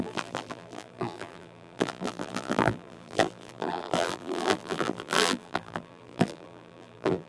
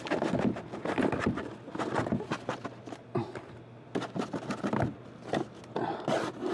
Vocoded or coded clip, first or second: first